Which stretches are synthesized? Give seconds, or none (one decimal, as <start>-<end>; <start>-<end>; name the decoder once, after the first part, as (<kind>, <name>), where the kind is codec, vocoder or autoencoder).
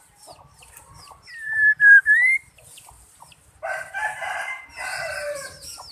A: 0.0-5.9 (vocoder, BigVGAN v2)